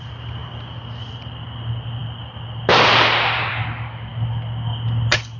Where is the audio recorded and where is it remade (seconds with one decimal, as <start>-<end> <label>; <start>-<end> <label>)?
0.0-5.4 recorded